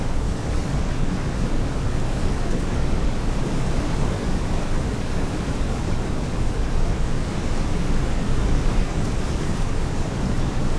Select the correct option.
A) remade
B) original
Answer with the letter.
A